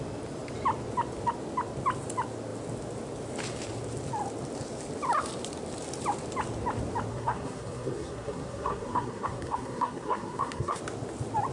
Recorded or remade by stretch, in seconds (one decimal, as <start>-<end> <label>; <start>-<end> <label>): 0.0-7.1 recorded; 7.1-10.8 remade; 10.8-11.5 recorded